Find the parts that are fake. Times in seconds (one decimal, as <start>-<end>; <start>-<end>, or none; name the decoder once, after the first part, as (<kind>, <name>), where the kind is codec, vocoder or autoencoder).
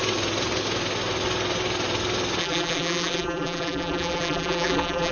2.4-5.1 (vocoder, BigVGAN v2)